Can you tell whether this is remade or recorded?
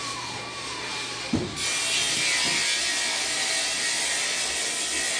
recorded